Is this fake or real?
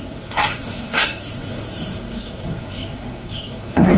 fake